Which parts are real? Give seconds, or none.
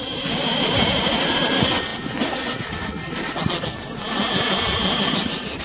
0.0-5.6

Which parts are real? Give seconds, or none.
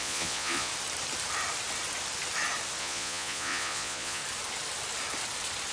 0.7-2.8; 4.2-5.7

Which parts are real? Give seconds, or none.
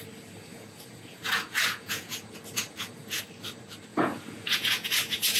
0.0-0.5; 3.2-3.9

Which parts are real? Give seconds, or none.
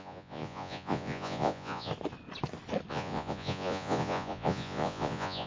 1.9-2.9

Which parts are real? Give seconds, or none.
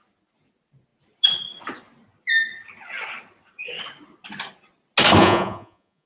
0.0-5.2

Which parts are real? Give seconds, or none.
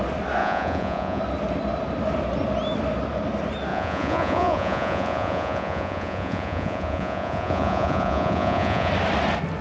0.0-0.4; 1.2-3.7; 8.9-9.6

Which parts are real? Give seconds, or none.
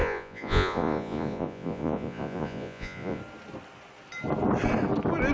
3.2-5.3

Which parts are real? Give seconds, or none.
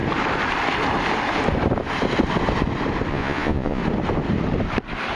0.0-3.1; 3.8-5.2